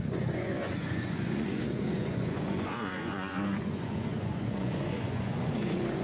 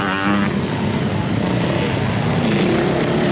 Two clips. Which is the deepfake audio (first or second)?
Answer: first